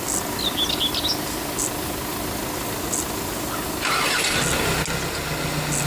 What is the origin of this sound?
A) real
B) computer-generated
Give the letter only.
A